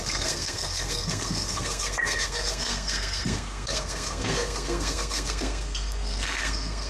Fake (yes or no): yes